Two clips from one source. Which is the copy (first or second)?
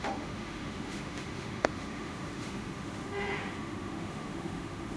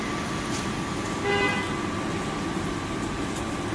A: first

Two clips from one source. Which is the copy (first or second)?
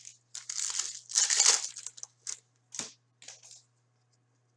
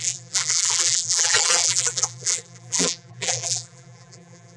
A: second